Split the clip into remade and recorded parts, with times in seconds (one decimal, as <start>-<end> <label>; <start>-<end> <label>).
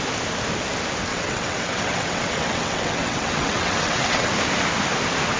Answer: 0.0-1.1 recorded; 1.1-4.3 remade; 4.3-5.4 recorded